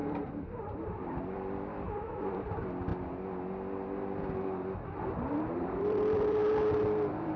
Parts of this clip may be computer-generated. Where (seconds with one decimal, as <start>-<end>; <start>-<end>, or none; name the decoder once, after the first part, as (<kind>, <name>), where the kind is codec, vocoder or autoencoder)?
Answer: 0.0-2.9 (vocoder, BigVGAN v2); 5.2-6.4